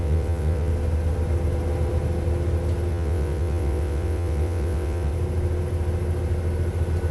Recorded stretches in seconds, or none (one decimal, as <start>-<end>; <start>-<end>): 0.7-2.9; 5.1-7.1